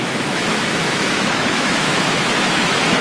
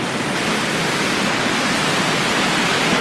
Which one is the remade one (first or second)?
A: first